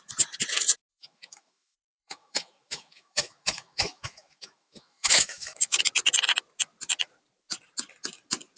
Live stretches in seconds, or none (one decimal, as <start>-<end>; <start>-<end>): 0.0-0.9; 5.8-8.6